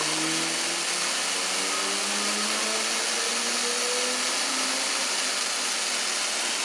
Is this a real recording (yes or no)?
yes